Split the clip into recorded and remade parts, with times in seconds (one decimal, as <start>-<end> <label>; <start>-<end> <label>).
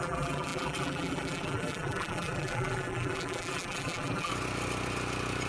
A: 0.0-4.3 remade; 4.3-5.5 recorded